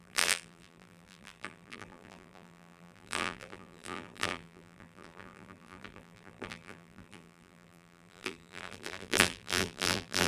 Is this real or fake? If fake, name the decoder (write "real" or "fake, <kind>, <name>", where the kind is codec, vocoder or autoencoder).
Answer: fake, vocoder, BigVGAN v2